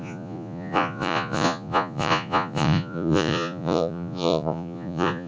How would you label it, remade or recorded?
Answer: remade